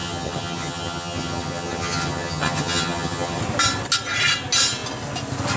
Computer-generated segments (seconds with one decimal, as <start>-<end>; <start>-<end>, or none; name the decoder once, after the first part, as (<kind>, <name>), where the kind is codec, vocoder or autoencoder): 0.0-3.4 (vocoder, HiFi-GAN)

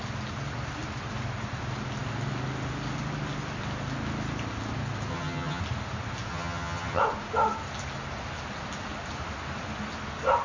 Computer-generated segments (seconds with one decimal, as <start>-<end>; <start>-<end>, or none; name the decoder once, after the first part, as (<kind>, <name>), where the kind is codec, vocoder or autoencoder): 5.1-5.6 (vocoder, HiFi-GAN); 6.3-7.0

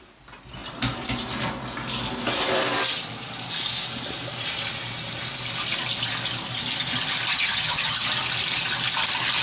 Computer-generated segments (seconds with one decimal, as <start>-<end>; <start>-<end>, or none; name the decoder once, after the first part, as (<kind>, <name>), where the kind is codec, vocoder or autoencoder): 7.3-8.1 (vocoder, HiFi-GAN)

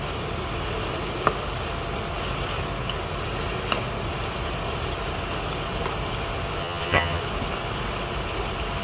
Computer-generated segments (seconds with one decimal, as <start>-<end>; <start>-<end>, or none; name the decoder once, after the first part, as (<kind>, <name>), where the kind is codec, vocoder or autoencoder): 6.6-7.2 (vocoder, HiFi-GAN)

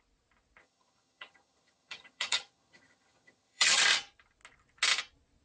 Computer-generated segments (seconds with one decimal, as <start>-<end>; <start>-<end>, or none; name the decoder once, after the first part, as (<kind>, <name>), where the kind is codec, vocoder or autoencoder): 0.6-3.8 (vocoder, HiFi-GAN)

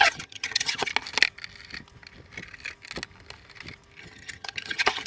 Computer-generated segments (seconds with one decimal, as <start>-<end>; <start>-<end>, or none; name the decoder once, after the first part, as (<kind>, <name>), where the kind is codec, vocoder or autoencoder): 0.0-0.9 (vocoder, HiFi-GAN); 4.0-5.1

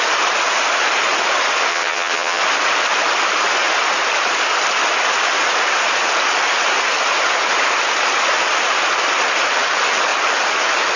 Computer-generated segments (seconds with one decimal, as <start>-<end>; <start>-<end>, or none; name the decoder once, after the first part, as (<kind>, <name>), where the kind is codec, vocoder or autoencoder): 1.7-2.4 (vocoder, HiFi-GAN)